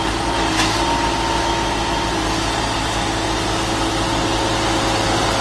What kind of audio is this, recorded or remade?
recorded